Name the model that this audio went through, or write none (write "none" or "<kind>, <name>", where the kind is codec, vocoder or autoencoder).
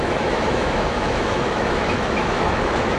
autoencoder, DAC-VAE